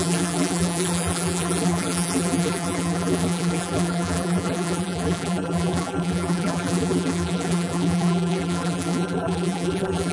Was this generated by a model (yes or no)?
yes